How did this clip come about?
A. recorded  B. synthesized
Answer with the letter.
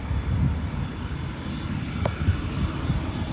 A